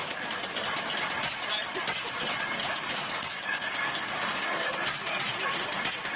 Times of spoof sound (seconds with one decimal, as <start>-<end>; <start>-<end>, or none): 2.6-4.7